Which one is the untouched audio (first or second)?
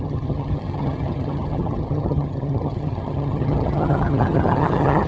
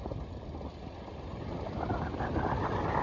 second